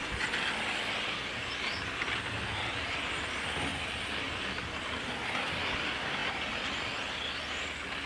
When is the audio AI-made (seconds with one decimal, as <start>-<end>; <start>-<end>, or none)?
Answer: none